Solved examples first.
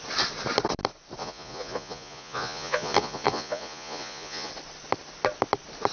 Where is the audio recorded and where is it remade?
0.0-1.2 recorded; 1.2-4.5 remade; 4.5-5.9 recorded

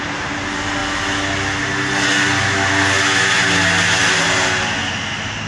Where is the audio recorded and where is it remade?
0.0-5.5 recorded

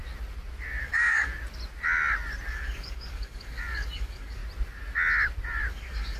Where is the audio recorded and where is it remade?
0.0-0.8 recorded; 0.8-1.3 remade; 1.3-2.5 recorded; 2.5-4.4 remade; 4.4-5.7 recorded; 5.7-6.2 remade

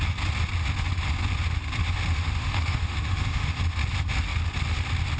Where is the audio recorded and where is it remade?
0.0-2.1 recorded; 2.1-3.6 remade; 3.6-5.2 recorded

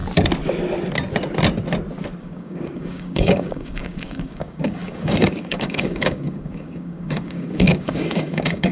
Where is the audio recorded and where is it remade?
0.0-2.2 recorded; 2.2-8.7 remade

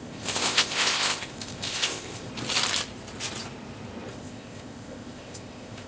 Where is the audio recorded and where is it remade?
0.0-2.3 remade; 2.3-4.1 recorded; 4.1-5.9 remade

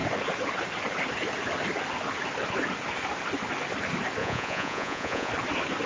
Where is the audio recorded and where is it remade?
0.0-4.2 recorded; 4.2-5.3 remade; 5.3-5.9 recorded